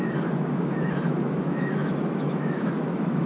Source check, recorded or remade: remade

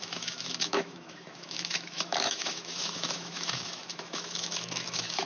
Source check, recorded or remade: remade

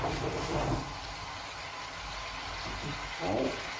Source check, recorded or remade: recorded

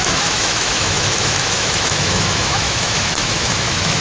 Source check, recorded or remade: remade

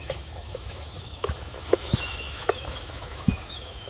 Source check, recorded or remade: remade